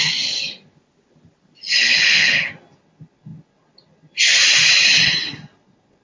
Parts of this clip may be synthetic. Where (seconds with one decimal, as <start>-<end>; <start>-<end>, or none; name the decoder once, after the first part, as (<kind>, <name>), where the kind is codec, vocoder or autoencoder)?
1.9-2.5 (codec, HILCodec)